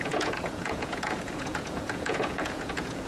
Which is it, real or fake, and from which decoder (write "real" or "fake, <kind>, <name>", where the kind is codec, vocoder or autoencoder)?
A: fake, vocoder, Vocos